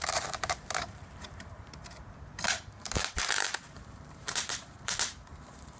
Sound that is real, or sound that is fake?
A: fake